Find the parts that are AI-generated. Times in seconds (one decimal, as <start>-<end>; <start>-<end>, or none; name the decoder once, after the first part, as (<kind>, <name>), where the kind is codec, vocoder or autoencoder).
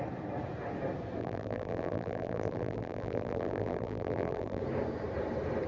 1.2-4.6 (vocoder, BigVGAN v2)